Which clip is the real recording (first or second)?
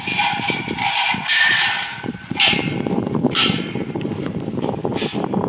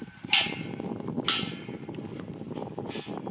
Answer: second